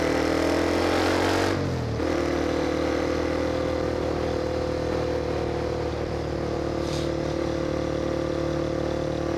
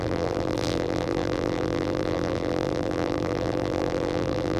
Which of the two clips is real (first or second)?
first